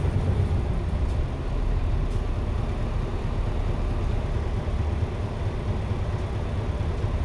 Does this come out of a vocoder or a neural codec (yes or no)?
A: no